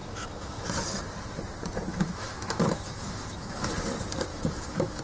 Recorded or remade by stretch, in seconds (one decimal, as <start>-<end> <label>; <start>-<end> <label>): 0.0-0.7 remade; 0.7-1.9 recorded; 1.9-3.7 remade; 3.7-4.3 recorded; 4.3-5.0 remade